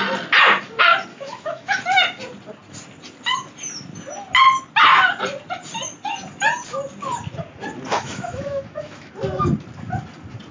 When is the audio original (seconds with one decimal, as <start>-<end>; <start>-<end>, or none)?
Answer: 0.0-1.1; 1.8-7.9; 9.1-10.5

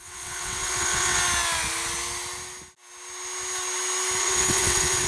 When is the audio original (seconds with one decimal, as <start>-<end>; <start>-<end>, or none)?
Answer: 1.2-4.2

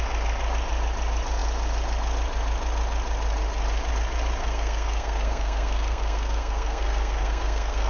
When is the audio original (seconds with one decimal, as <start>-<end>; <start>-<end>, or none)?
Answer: 0.0-4.4

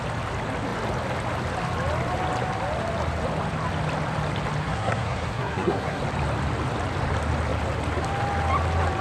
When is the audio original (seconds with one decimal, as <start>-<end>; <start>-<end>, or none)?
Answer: 0.0-4.6; 6.0-9.0

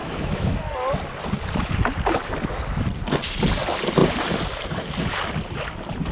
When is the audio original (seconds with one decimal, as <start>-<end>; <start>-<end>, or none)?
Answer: 0.6-6.1

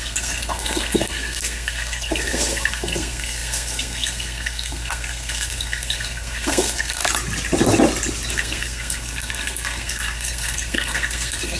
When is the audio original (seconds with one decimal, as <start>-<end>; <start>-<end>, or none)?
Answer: 7.0-8.3

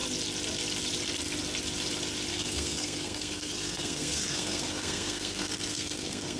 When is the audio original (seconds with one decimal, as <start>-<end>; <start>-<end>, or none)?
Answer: 0.0-2.3

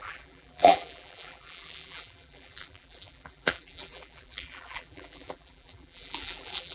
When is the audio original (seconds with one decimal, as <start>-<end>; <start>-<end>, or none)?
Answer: none